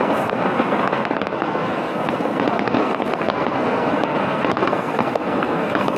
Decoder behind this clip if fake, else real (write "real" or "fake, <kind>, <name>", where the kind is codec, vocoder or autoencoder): fake, codec, SNAC